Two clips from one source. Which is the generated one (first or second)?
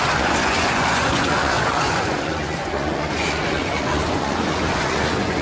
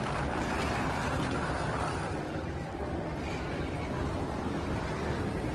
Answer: first